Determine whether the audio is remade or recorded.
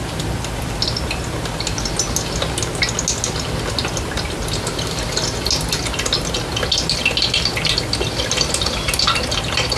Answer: recorded